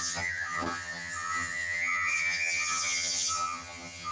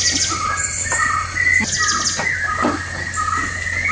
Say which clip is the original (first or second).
second